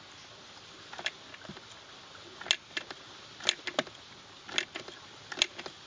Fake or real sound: real